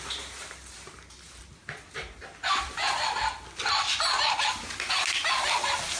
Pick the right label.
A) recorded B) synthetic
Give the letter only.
A